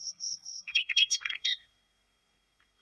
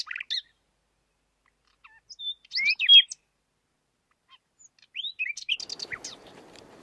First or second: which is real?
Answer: second